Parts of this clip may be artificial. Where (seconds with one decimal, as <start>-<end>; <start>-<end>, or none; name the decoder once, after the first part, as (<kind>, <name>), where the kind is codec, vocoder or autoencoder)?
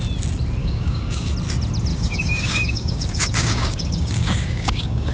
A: 0.6-1.3 (codec, DAC); 1.9-5.1